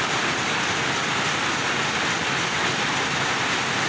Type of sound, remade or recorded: recorded